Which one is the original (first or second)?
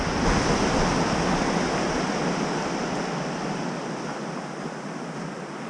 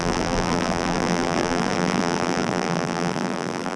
first